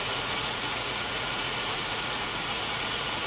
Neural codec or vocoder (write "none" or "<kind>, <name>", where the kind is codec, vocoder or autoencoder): vocoder, Vocos